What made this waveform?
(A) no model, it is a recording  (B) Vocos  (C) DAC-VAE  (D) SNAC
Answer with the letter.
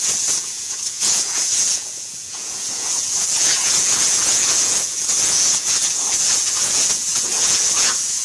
B